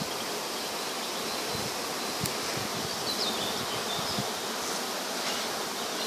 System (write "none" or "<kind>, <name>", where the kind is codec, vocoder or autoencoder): none